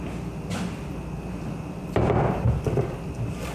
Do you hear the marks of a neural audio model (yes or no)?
no